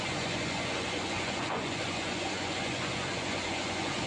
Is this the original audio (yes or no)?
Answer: no